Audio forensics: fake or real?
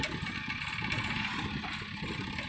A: real